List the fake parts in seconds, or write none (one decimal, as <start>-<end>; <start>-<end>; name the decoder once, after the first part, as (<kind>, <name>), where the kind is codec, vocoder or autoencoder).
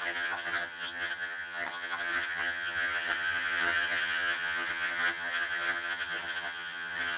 0.0-7.2 (vocoder, HiFi-GAN)